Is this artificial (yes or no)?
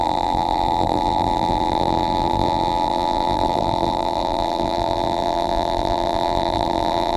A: yes